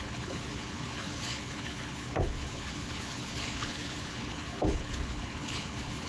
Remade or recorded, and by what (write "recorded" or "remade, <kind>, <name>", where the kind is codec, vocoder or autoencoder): remade, codec, HILCodec